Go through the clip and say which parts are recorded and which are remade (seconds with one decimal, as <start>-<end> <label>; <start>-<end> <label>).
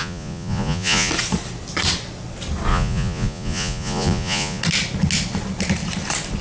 0.0-1.1 remade; 1.1-2.7 recorded; 2.7-4.6 remade; 4.6-6.4 recorded